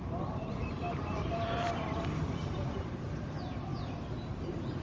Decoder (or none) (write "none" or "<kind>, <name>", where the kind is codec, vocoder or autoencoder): vocoder, BigVGAN v2